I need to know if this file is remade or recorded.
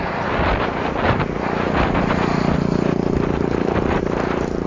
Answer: recorded